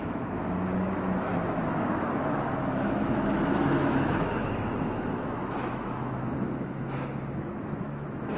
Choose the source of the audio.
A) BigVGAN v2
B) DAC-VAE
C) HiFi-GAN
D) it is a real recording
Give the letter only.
B